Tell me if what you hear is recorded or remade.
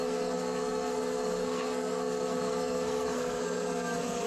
remade